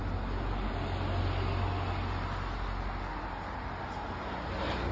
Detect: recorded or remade recorded